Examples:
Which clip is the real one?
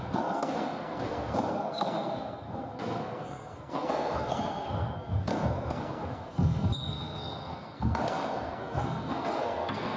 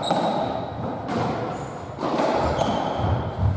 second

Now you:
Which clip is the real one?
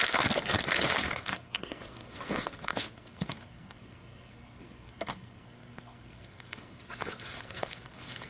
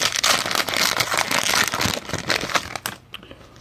second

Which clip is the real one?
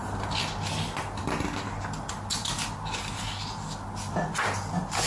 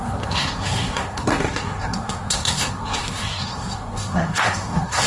first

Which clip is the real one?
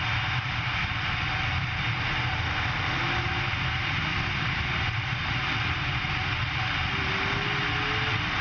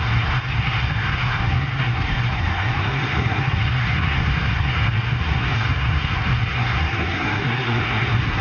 first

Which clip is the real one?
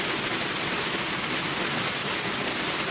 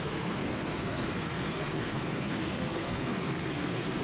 first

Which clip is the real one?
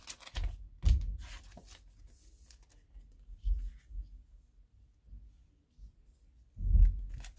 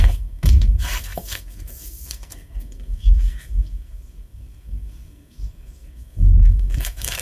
first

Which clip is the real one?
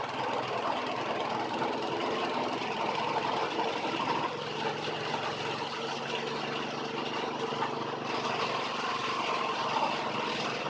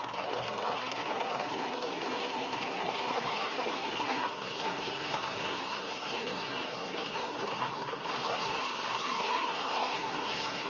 first